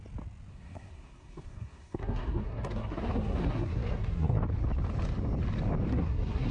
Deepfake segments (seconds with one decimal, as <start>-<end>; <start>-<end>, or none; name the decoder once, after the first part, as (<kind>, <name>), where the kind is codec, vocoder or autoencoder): 0.5-4.4 (codec, SNAC); 5.9-6.5